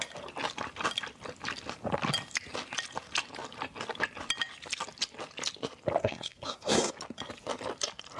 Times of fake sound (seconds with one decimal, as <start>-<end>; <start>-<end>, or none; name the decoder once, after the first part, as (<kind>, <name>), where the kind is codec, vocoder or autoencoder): 6.0-6.9 (codec, SNAC)